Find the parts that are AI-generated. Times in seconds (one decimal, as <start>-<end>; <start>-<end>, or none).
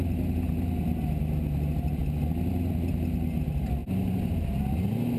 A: none